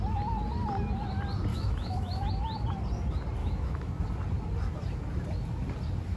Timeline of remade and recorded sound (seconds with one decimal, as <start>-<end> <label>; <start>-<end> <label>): 0.0-1.5 recorded; 1.5-2.3 remade; 2.3-3.4 recorded; 3.4-4.0 remade; 4.0-6.2 recorded